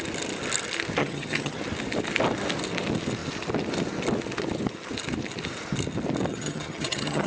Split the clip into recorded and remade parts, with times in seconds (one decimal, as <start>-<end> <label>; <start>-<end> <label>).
0.0-1.0 recorded; 1.0-1.6 remade; 1.6-6.3 recorded; 6.3-7.3 remade